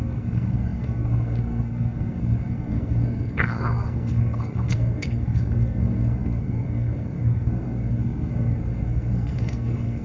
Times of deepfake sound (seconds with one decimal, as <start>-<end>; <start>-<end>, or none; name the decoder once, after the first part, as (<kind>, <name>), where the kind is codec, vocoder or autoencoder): 0.0-10.0 (codec, SNAC)